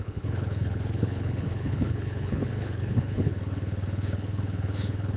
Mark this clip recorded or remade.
remade